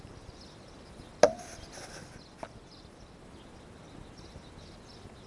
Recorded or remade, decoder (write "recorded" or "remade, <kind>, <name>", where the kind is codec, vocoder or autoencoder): recorded